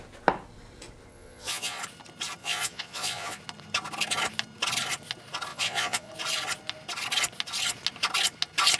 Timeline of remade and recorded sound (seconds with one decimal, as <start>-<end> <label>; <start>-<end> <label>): 0.0-1.1 recorded; 1.1-1.8 remade; 1.8-2.4 recorded; 2.4-3.4 remade; 3.4-5.5 recorded; 5.5-6.1 remade; 6.1-8.8 recorded